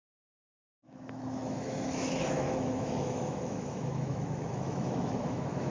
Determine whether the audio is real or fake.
fake